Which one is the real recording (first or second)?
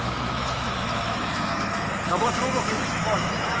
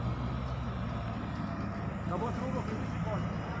second